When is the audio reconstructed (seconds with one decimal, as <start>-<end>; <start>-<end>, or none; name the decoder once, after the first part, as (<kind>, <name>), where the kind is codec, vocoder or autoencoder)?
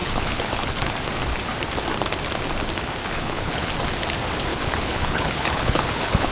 0.0-0.9 (codec, HILCodec); 3.0-3.7; 4.5-6.3